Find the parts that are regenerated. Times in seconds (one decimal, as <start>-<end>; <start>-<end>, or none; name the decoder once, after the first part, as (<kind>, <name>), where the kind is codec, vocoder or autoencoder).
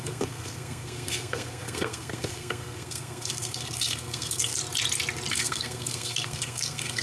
0.0-4.6 (codec, SNAC); 5.3-7.0